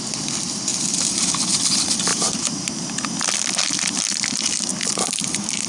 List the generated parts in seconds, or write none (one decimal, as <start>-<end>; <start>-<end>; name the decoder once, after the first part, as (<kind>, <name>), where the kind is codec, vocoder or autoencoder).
0.7-1.3 (vocoder, BigVGAN v2); 2.1-2.8